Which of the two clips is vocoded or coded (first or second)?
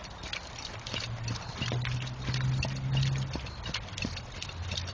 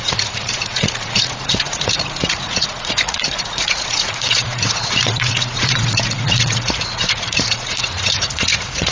second